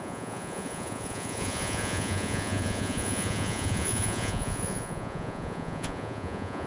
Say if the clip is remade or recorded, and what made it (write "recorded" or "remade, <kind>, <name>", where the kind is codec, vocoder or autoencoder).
remade, vocoder, Vocos